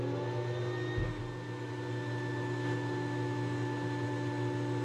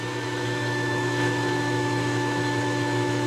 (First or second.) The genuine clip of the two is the first